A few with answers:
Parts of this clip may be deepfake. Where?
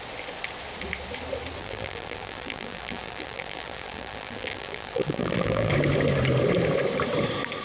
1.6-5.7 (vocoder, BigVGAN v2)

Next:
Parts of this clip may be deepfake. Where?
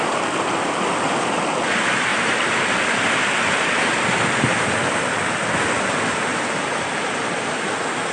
6.3-7.6 (vocoder, BigVGAN v2)